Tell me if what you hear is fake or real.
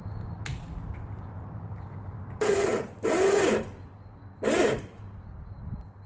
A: real